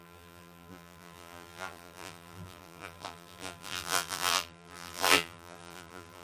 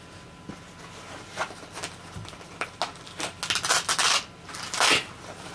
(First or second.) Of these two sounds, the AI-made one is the first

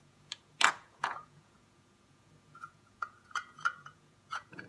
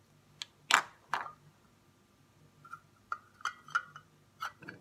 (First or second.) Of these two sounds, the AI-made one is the first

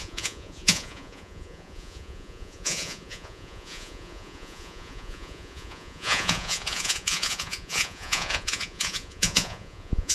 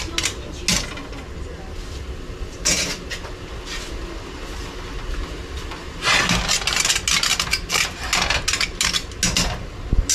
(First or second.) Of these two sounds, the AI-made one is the first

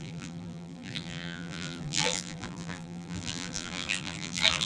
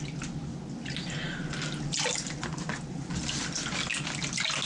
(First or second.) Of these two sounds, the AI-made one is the first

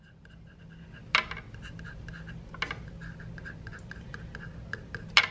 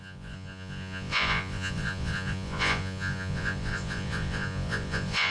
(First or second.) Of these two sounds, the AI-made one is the second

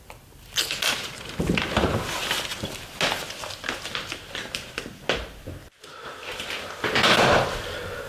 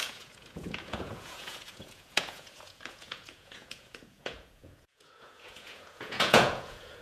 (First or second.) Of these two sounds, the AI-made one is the second